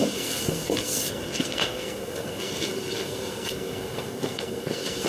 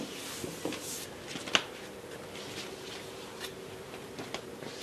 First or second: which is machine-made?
first